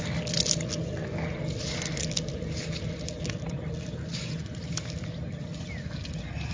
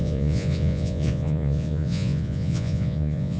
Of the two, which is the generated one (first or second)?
second